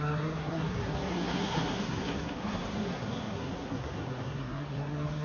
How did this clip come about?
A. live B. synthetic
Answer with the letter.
B